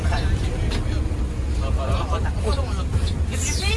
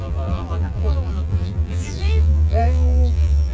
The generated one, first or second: second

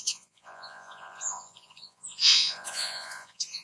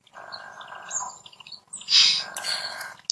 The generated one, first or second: first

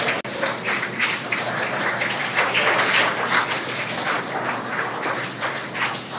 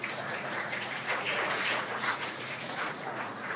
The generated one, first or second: second